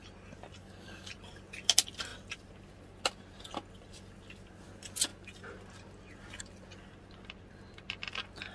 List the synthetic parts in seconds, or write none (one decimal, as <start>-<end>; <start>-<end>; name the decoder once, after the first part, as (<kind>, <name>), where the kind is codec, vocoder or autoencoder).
0.6-1.1 (codec, DAC)